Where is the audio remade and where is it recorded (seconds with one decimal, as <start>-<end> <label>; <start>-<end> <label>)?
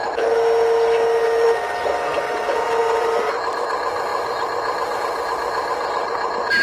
0.0-6.6 recorded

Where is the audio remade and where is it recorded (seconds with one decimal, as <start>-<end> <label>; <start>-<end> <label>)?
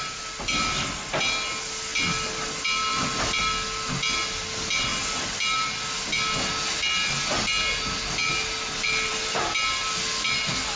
0.0-2.9 recorded; 2.9-3.4 remade; 3.4-10.8 recorded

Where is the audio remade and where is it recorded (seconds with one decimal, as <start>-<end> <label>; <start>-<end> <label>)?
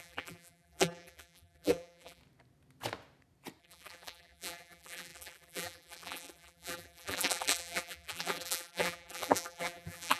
0.0-2.2 remade; 2.2-3.6 recorded; 3.6-10.2 remade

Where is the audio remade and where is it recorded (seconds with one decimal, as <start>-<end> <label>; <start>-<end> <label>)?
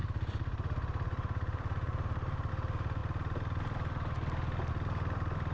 0.0-2.5 remade; 2.5-5.5 recorded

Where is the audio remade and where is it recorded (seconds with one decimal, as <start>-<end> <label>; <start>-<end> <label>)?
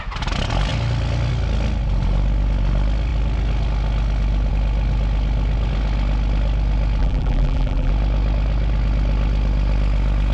0.0-7.0 recorded; 7.0-7.9 remade; 7.9-10.3 recorded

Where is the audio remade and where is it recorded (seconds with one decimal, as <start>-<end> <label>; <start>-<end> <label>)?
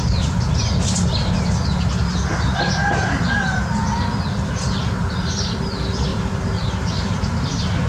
0.0-7.9 recorded